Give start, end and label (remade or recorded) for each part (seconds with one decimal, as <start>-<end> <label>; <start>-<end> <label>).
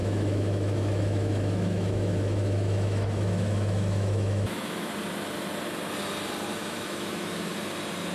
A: 0.0-4.9 remade; 4.9-6.6 recorded; 6.6-7.3 remade; 7.3-8.1 recorded